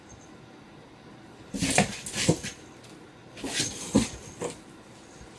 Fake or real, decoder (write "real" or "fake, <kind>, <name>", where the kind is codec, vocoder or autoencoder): real